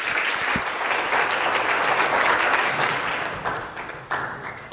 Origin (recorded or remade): remade